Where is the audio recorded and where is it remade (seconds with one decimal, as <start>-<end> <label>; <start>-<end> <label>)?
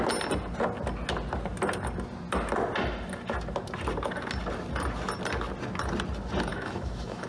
0.0-6.5 recorded; 6.5-7.3 remade